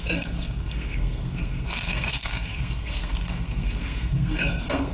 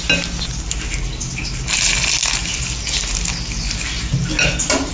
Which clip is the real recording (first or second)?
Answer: second